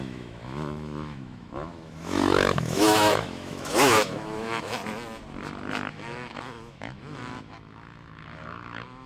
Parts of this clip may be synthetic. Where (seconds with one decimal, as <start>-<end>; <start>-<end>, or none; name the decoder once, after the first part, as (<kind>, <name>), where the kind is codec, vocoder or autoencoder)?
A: 0.0-4.8 (autoencoder, DAC-VAE); 5.9-9.1